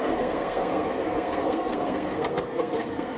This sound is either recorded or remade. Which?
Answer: remade